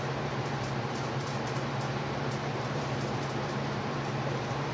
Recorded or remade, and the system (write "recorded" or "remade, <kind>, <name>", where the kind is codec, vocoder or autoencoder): remade, vocoder, BigVGAN v2